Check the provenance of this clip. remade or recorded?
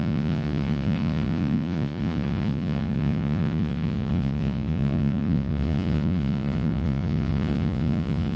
remade